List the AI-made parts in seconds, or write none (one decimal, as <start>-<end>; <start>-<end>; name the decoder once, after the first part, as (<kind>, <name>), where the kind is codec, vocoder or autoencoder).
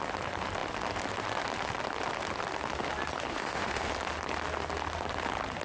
3.3-3.9 (autoencoder, DAC-VAE)